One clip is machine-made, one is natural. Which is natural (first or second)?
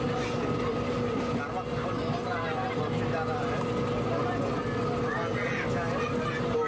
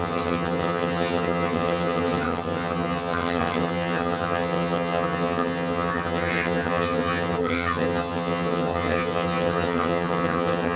first